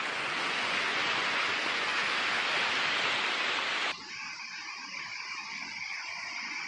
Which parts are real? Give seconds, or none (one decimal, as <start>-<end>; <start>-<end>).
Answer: 2.0-6.0